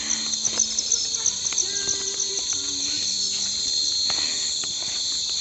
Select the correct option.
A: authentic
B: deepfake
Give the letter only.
A